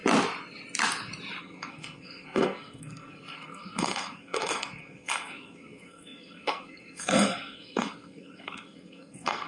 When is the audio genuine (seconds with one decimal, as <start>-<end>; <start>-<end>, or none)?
0.0-1.4